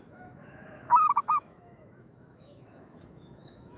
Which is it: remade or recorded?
remade